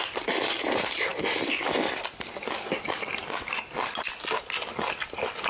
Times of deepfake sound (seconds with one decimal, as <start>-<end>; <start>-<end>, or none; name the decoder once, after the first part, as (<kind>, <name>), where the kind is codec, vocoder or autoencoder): none